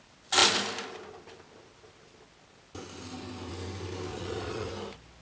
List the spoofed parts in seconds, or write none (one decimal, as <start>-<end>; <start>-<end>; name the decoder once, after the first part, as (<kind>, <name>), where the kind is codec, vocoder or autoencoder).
4.1-4.7 (vocoder, Vocos)

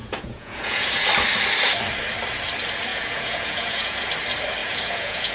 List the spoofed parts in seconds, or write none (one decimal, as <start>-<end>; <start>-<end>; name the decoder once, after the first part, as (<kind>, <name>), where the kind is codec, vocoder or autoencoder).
0.0-0.9 (vocoder, Vocos); 2.9-4.1; 4.6-5.3

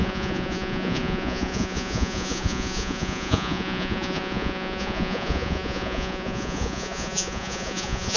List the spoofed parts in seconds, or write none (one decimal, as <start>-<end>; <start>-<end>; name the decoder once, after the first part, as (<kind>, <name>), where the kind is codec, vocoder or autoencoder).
0.0-8.2 (vocoder, Vocos)

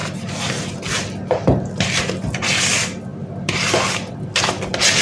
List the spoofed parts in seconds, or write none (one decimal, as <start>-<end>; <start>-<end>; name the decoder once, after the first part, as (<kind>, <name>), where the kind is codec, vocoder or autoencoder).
none

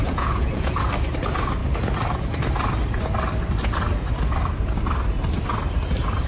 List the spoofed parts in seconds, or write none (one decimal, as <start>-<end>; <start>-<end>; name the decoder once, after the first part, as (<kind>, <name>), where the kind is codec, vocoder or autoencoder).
0.0-0.8 (vocoder, Vocos)

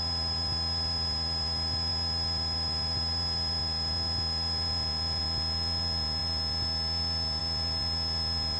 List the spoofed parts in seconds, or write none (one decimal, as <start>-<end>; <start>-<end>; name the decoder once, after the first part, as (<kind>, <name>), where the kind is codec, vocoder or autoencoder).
none

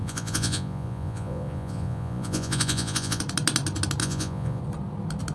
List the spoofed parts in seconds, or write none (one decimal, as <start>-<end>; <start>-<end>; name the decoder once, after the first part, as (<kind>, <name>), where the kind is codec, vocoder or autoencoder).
0.0-3.2 (vocoder, Vocos); 4.0-4.6

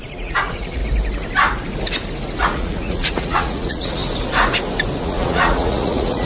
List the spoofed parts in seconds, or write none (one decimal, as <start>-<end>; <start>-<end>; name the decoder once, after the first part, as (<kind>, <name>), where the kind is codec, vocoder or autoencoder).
0.0-0.8 (vocoder, Vocos); 2.4-4.0; 5.0-6.3